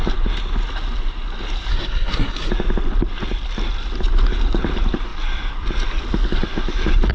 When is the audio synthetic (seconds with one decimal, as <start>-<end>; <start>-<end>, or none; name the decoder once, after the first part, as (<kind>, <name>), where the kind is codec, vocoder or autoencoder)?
1.7-2.5 (codec, SNAC)